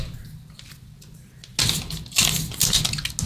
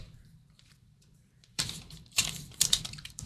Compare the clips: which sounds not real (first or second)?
second